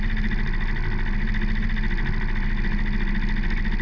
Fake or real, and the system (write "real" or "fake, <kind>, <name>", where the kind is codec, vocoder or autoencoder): real